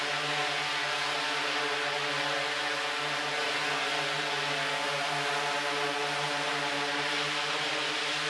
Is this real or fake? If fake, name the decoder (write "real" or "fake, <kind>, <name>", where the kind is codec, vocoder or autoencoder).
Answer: real